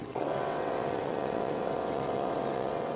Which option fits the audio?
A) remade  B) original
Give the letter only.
A